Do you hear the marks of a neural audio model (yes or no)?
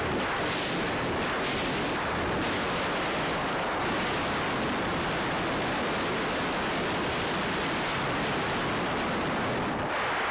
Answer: yes